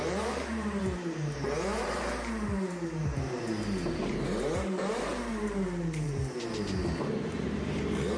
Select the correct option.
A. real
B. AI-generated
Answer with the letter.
B